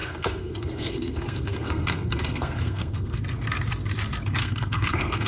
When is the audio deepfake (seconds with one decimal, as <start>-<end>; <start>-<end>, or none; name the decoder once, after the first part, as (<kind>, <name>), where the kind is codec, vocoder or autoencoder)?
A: 0.0-3.2 (codec, SNAC); 4.4-5.3